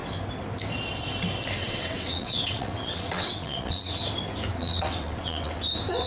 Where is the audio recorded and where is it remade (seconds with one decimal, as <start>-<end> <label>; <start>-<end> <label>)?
0.0-1.6 recorded; 1.6-4.0 remade; 4.0-4.5 recorded; 4.5-5.6 remade; 5.6-6.1 recorded